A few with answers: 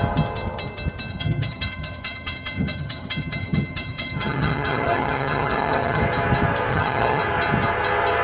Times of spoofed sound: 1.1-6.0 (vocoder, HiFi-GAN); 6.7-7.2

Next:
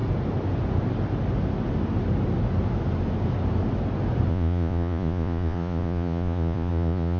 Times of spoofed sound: 4.3-7.2 (vocoder, Vocos)

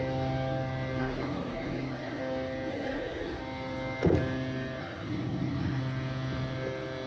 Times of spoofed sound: 1.0-2.2 (codec, SNAC); 2.7-3.4; 4.8-5.8

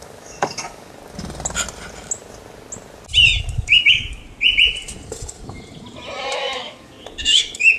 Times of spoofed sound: 0.0-1.0 (codec, DAC); 3.4-4.2; 6.3-7.8